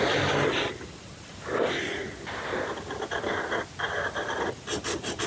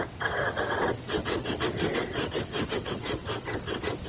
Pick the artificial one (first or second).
second